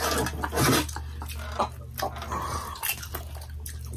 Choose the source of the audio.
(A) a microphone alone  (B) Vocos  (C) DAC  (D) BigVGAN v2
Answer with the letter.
A